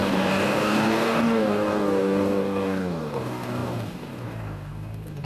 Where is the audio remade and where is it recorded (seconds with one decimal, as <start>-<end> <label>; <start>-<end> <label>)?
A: 0.0-5.2 remade